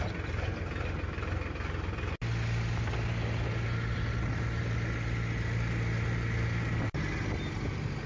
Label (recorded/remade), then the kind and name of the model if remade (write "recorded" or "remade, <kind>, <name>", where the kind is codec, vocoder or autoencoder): recorded